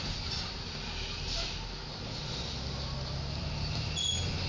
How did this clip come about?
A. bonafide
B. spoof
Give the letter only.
A